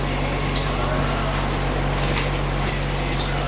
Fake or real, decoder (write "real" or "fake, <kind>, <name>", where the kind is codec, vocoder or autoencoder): real